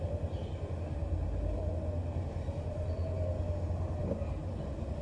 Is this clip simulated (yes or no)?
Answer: no